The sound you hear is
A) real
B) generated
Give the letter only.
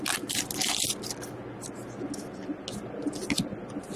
A